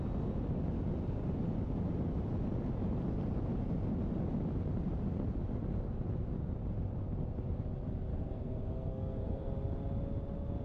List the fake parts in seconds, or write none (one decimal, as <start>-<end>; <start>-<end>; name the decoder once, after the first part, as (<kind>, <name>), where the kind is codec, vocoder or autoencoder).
8.1-9.5 (codec, SNAC)